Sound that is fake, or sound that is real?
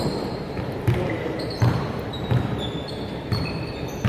fake